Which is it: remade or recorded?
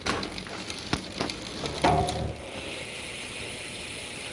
recorded